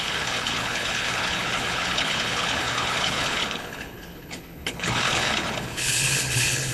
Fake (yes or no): yes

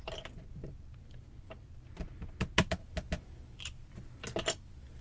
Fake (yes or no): no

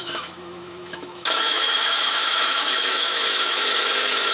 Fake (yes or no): yes